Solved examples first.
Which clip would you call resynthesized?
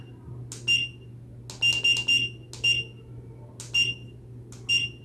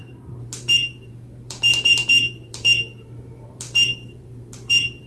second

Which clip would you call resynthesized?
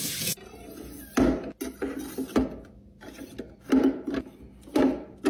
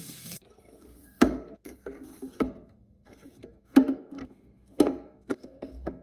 second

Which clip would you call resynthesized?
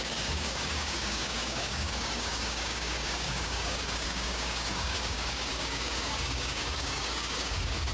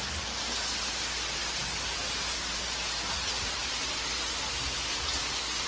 first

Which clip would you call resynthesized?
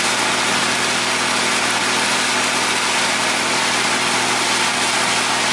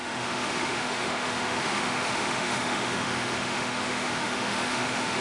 second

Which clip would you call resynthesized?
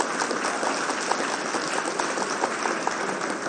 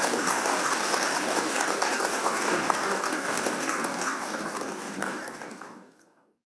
second